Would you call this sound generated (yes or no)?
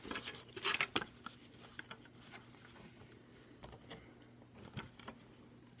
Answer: no